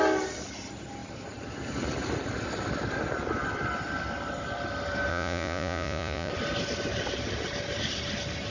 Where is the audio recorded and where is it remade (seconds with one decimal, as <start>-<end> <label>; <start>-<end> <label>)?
0.0-5.1 recorded; 5.1-6.3 remade; 6.3-8.5 recorded